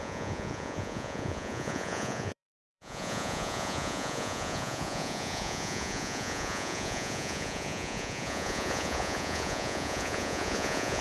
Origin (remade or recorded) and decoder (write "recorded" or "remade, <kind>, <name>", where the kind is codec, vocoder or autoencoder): remade, vocoder, Vocos